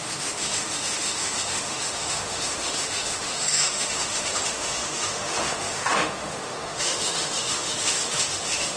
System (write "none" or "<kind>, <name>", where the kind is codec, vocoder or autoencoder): autoencoder, DAC-VAE